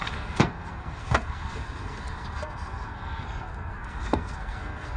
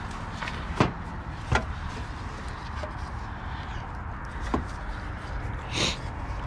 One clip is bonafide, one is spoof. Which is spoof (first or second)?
first